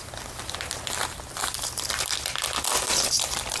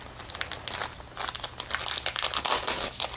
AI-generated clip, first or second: first